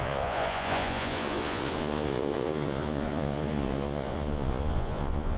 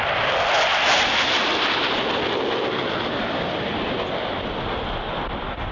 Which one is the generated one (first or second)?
first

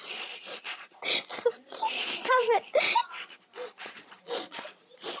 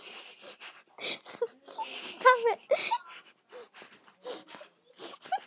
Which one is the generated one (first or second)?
first